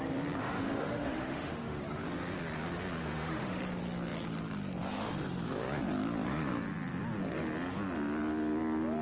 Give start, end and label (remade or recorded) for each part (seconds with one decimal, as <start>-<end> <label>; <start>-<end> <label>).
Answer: 0.0-0.4 recorded; 0.4-1.8 remade; 1.8-3.0 recorded; 3.0-3.6 remade; 3.6-9.0 recorded